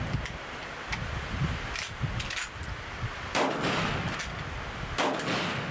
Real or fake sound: real